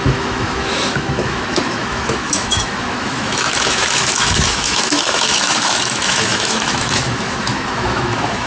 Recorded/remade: remade